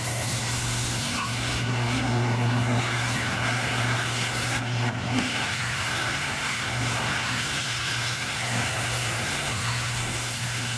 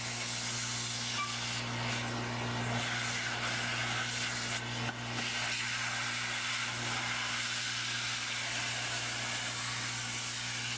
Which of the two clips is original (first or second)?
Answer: second